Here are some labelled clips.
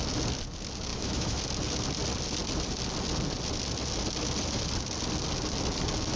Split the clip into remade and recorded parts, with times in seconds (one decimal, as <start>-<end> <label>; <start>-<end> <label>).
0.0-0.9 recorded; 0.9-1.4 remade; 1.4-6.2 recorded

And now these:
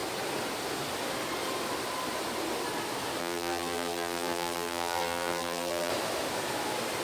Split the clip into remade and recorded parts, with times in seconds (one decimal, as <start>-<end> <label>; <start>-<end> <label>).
0.0-3.2 recorded; 3.2-5.9 remade; 5.9-7.0 recorded

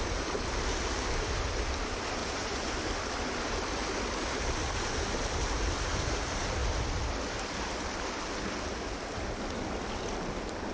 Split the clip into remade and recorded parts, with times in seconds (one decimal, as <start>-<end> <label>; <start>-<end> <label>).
0.0-2.2 recorded; 2.2-2.7 remade; 2.7-10.7 recorded

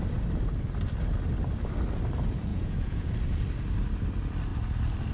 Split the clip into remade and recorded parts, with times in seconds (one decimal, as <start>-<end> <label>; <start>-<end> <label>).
0.0-2.5 recorded; 2.5-3.1 remade; 3.1-5.1 recorded

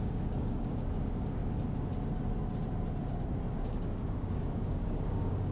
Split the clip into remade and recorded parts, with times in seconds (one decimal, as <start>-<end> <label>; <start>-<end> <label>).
0.0-1.4 remade; 1.4-3.5 recorded; 3.5-5.5 remade